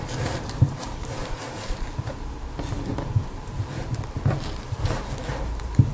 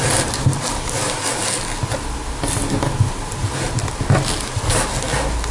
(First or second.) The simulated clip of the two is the first